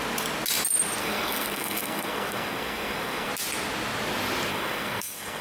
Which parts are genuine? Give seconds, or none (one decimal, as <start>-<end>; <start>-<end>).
0.0-1.0; 3.3-4.5